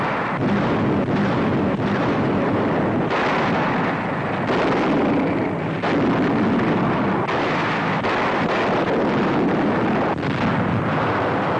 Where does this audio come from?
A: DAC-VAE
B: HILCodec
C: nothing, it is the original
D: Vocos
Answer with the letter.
C